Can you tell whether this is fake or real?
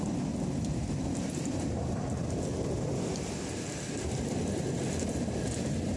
real